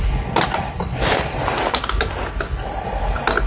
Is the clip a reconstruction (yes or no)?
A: yes